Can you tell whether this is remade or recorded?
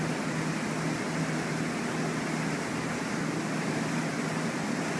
recorded